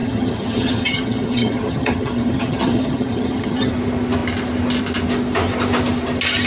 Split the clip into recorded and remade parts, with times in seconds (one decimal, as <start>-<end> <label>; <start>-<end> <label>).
0.0-3.7 remade; 3.7-6.5 recorded